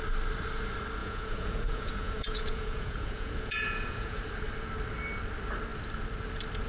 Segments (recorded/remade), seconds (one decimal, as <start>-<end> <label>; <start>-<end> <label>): 0.0-1.0 recorded; 1.0-4.2 remade; 4.2-6.7 recorded